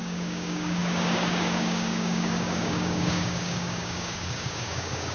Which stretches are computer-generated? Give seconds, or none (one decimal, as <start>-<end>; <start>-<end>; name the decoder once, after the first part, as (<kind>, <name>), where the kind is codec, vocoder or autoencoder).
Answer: 0.0-5.1 (codec, DAC)